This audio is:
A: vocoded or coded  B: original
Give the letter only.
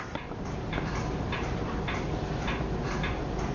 B